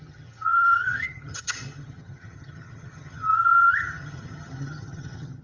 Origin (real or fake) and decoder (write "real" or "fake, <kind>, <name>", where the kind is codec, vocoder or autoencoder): fake, vocoder, HiFi-GAN